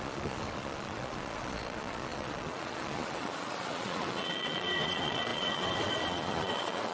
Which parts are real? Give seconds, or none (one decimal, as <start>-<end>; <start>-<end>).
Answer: none